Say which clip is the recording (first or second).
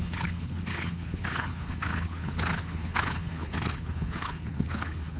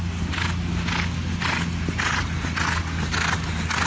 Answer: second